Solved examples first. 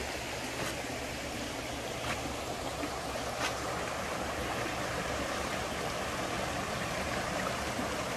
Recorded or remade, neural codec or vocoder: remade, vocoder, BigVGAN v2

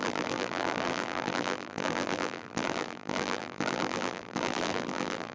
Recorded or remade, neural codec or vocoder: remade, vocoder, BigVGAN v2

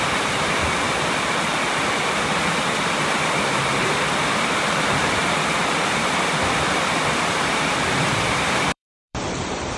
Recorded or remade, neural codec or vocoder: remade, vocoder, BigVGAN v2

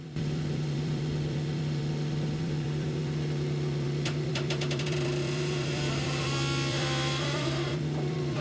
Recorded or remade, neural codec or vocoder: remade, vocoder, BigVGAN v2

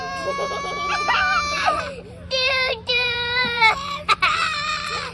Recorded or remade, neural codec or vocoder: remade, vocoder, BigVGAN v2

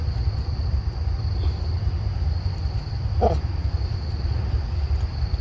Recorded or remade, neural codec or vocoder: recorded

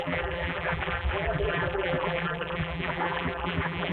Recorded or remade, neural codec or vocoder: remade, vocoder, BigVGAN v2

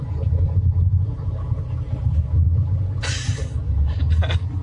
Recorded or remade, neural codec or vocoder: recorded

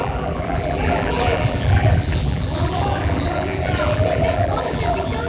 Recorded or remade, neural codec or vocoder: remade, vocoder, BigVGAN v2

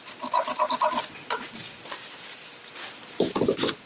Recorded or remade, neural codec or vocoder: remade, vocoder, BigVGAN v2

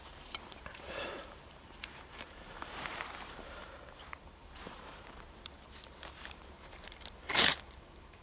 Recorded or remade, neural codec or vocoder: remade, vocoder, BigVGAN v2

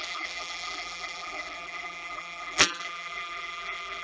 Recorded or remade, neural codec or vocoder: remade, vocoder, BigVGAN v2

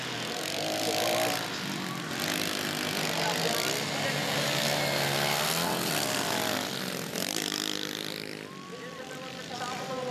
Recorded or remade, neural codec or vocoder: recorded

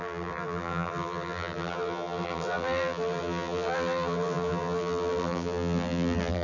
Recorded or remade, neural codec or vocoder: remade, vocoder, BigVGAN v2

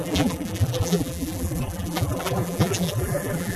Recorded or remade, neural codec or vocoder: remade, vocoder, BigVGAN v2